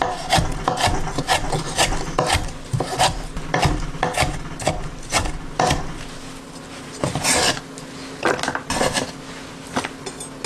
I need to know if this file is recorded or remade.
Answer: recorded